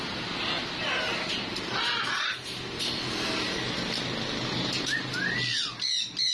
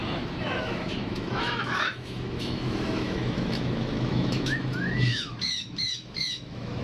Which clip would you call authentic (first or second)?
first